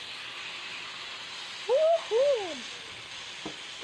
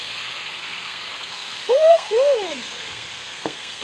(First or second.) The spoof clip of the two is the second